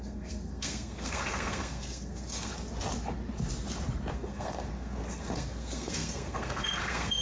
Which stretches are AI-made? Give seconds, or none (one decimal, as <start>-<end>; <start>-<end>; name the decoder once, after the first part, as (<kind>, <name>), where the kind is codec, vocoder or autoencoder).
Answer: 0.0-2.5 (codec, SNAC); 4.1-7.2